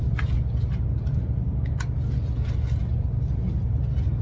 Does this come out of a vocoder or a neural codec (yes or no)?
no